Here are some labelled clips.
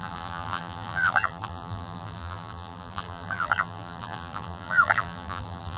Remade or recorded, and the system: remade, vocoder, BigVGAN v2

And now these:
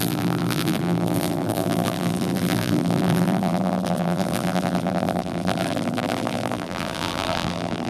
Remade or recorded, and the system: remade, vocoder, BigVGAN v2